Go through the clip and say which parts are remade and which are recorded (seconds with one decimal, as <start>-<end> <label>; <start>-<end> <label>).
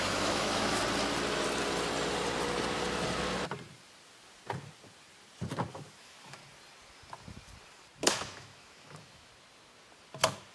0.0-0.8 remade; 0.8-5.7 recorded; 5.7-6.4 remade; 6.4-8.1 recorded; 8.1-9.3 remade; 9.3-10.5 recorded